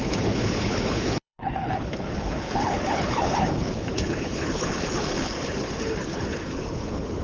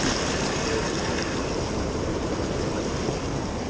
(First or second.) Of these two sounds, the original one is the second